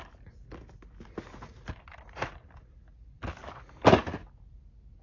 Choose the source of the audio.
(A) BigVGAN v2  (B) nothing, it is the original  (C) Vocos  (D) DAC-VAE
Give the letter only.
B